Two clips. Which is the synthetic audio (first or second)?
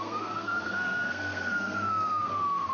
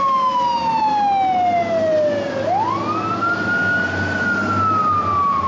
first